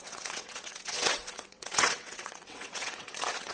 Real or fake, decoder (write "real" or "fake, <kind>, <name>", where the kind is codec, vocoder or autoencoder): fake, vocoder, WaveNeXt